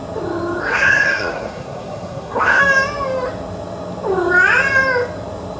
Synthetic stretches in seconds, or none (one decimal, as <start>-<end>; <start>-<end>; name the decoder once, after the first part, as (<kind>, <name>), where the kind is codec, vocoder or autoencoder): 0.6-2.6 (codec, SNAC)